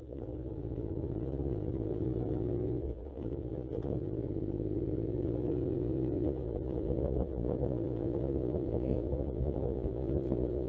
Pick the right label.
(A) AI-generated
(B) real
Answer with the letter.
A